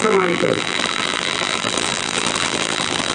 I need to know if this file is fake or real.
fake